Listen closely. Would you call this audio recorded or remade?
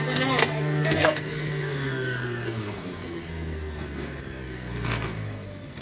remade